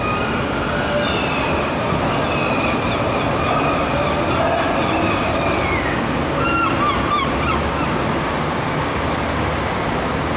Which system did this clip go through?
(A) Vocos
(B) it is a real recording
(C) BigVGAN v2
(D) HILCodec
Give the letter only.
B